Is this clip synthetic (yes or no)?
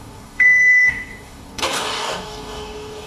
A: yes